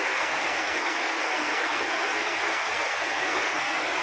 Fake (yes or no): yes